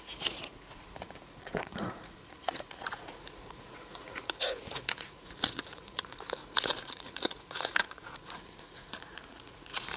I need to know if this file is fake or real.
fake